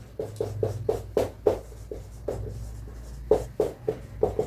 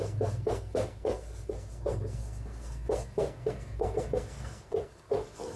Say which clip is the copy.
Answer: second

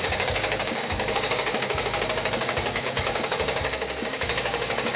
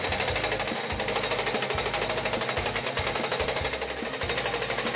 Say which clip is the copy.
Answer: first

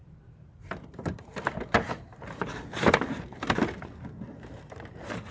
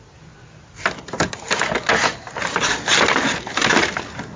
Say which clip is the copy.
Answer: first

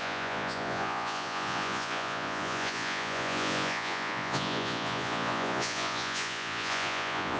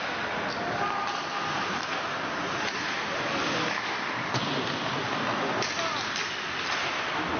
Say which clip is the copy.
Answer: first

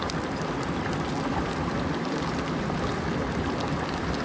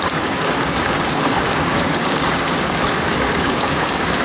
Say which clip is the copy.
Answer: second